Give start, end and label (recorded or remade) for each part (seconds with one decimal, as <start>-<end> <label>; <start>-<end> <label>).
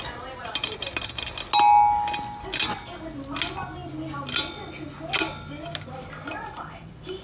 0.0-7.2 recorded